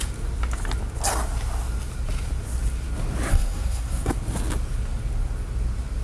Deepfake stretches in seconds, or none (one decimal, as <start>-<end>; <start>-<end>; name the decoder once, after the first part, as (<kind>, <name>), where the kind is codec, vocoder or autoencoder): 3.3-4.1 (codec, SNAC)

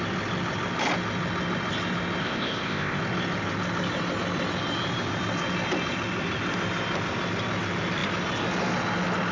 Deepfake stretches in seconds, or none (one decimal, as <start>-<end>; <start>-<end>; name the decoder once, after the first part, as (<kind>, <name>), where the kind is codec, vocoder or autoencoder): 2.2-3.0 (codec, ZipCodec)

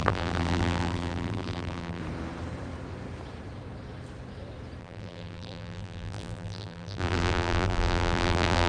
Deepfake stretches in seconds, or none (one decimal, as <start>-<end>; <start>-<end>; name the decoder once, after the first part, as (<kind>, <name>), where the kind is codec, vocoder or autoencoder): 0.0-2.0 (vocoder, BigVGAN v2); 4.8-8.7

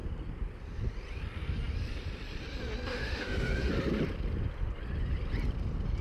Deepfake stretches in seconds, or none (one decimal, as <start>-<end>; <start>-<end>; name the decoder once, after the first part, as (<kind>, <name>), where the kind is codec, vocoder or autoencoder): 2.9-3.7 (autoencoder, DAC-VAE)